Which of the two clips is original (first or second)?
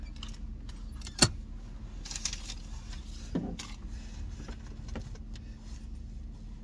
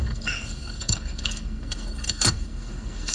first